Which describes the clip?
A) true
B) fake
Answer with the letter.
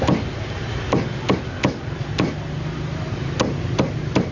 A